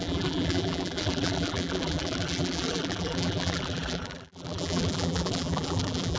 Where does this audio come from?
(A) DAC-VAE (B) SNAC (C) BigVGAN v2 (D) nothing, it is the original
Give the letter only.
C